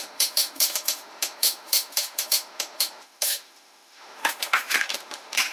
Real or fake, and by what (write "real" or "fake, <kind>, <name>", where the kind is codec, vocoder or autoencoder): fake, autoencoder, DAC-VAE